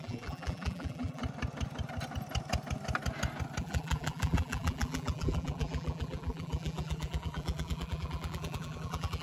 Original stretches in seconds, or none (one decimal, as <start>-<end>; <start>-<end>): 1.2-3.6